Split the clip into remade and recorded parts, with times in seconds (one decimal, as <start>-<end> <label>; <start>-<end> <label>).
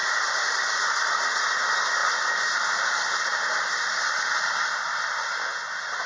0.0-0.8 remade; 0.8-6.1 recorded